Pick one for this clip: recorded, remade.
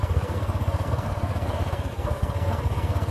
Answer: remade